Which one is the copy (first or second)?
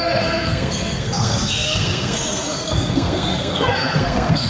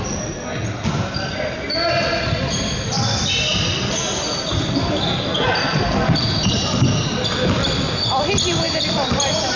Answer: first